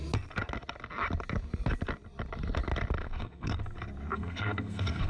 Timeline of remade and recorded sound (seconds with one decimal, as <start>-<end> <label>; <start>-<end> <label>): 0.0-3.0 recorded; 3.0-3.6 remade; 3.6-4.1 recorded; 4.1-5.1 remade